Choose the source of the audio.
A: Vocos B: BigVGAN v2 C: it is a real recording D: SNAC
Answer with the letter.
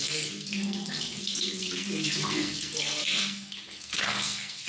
D